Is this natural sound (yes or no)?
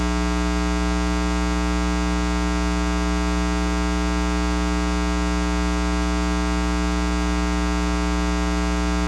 yes